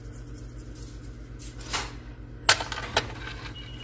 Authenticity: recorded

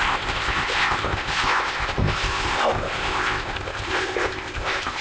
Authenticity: remade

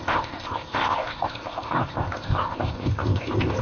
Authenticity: remade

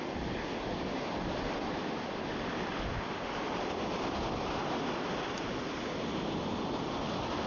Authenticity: recorded